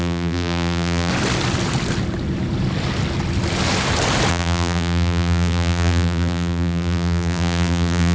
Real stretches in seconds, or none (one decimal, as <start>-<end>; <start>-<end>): 1.1-4.3